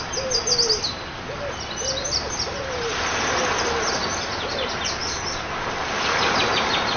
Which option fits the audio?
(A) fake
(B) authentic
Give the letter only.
B